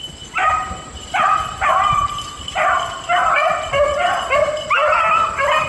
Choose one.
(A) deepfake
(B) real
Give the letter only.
B